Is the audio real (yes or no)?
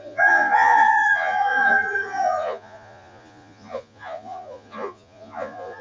no